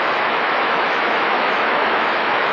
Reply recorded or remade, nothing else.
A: remade